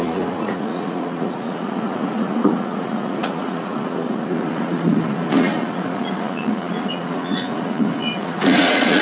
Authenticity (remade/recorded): remade